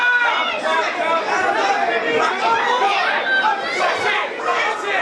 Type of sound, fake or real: real